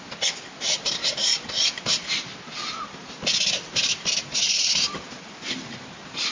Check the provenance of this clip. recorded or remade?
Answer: recorded